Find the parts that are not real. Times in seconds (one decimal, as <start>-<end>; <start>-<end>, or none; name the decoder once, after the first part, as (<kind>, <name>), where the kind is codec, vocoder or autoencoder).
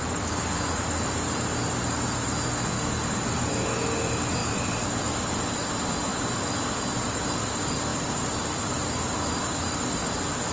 4.4-5.1 (vocoder, BigVGAN v2); 7.9-9.4